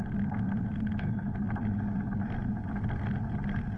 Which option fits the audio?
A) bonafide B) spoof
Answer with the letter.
A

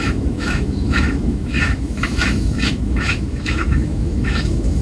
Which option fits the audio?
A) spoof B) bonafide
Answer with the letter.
A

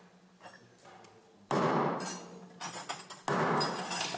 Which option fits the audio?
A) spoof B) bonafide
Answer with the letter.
B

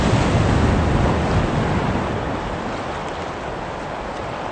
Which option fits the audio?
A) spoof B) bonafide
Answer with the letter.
B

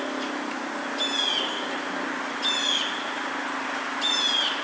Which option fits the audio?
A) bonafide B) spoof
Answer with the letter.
A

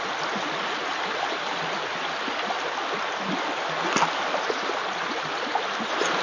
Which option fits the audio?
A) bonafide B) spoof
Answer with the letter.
A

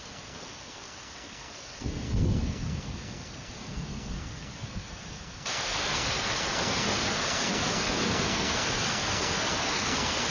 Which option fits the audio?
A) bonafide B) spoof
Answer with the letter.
B